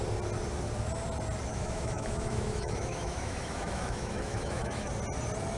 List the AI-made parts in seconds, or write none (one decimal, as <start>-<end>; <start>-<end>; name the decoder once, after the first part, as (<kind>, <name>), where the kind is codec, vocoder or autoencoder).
1.5-4.9 (autoencoder, DAC-VAE)